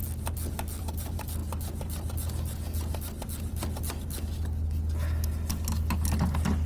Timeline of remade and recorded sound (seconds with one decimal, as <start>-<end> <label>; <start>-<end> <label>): 0.0-6.7 recorded